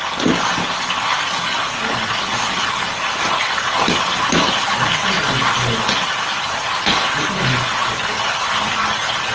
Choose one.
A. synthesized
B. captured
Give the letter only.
B